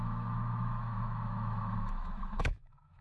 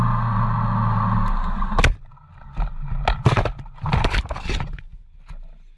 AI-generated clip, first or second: first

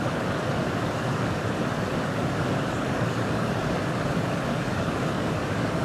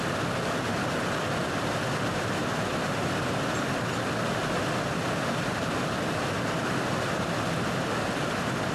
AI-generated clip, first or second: first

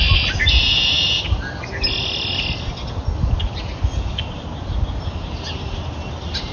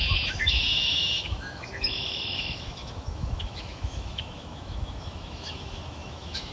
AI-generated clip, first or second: second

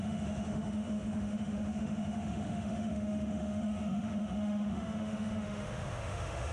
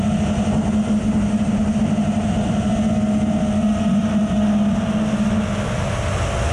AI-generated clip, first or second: first